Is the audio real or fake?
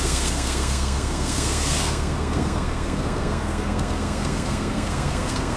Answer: fake